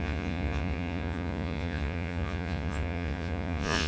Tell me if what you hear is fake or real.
fake